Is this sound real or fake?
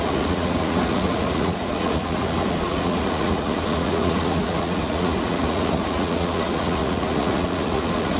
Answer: fake